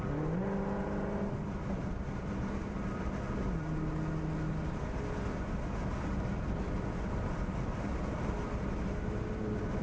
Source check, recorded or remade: recorded